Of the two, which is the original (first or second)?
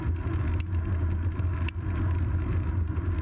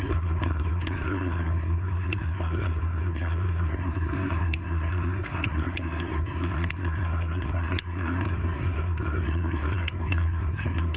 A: first